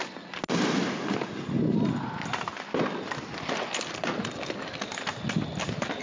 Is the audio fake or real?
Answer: real